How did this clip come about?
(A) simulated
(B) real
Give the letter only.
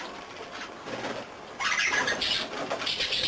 B